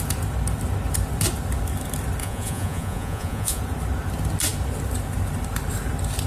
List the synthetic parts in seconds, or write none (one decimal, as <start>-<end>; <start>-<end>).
2.2-3.6

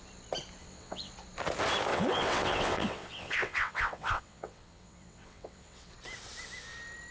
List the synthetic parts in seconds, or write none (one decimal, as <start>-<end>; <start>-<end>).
0.6-1.1; 1.9-5.9